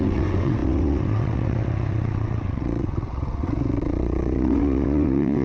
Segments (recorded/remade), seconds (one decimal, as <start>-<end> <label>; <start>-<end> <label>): 0.0-5.4 remade